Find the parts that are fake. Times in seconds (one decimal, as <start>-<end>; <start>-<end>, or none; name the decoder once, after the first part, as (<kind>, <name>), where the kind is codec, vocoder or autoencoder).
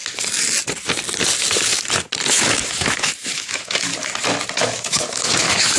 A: 2.3-3.9 (autoencoder, DAC-VAE); 4.6-5.8